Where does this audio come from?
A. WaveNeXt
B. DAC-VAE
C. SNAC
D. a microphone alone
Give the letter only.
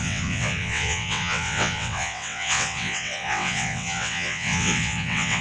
A